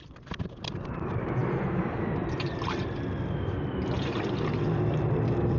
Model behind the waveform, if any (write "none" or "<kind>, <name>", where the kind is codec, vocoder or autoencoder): vocoder, BigVGAN v2